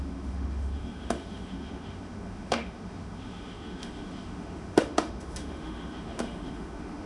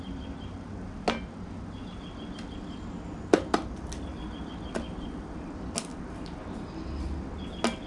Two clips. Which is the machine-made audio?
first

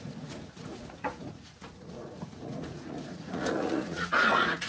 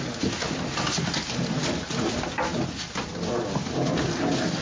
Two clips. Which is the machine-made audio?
first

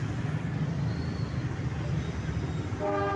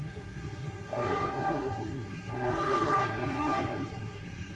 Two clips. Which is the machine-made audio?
second